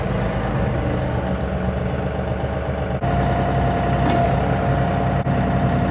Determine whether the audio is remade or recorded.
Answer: recorded